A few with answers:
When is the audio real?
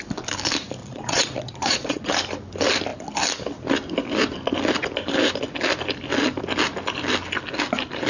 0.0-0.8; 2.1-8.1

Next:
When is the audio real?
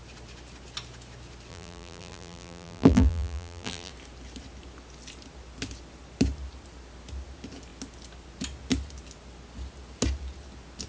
0.0-1.5; 3.9-10.9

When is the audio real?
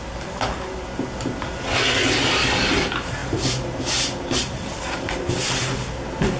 0.0-6.4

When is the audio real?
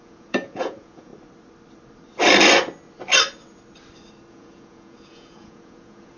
1.1-4.3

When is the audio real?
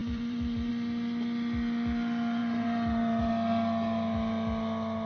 0.7-2.4; 3.3-5.1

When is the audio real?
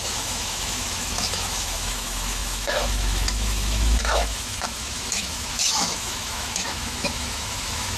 none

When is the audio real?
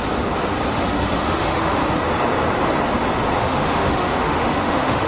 0.0-0.7; 1.8-3.4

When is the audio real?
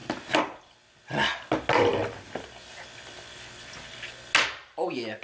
0.0-5.2